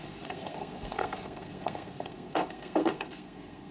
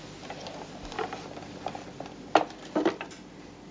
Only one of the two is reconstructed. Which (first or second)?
first